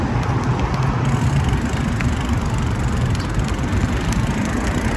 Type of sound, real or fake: real